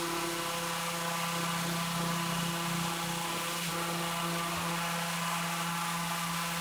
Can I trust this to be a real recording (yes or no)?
yes